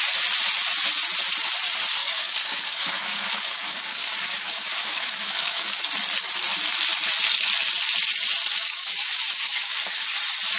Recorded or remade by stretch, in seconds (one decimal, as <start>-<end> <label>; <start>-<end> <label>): 0.0-2.0 recorded; 2.0-5.8 remade; 5.8-8.5 recorded; 8.5-10.2 remade; 10.2-10.6 recorded

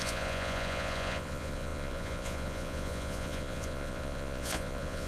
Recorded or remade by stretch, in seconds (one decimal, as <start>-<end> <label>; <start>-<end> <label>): 0.0-5.1 remade

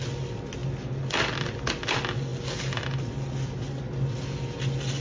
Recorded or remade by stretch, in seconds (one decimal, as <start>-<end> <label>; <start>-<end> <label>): 0.0-5.0 recorded